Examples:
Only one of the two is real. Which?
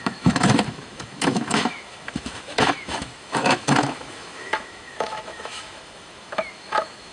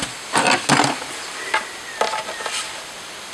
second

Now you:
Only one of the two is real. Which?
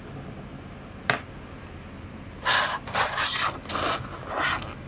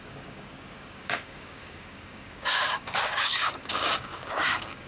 first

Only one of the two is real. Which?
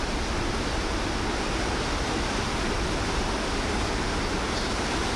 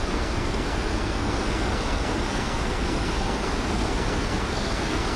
first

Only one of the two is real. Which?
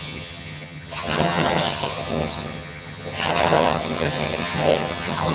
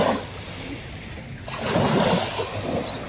second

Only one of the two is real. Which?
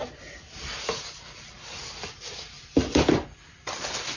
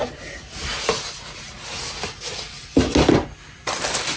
second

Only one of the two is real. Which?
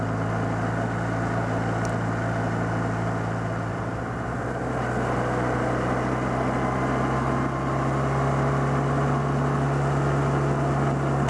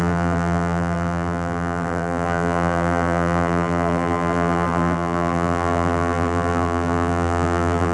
first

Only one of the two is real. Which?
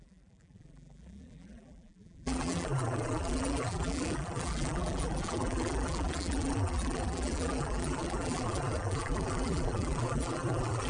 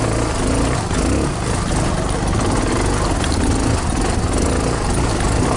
second